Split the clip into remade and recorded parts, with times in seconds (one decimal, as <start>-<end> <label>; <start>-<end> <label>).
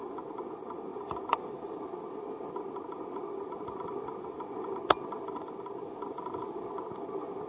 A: 0.0-0.9 recorded; 0.9-1.8 remade; 1.8-7.5 recorded